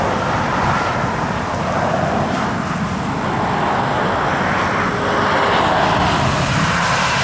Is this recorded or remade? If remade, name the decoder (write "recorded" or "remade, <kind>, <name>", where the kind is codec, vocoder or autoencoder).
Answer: recorded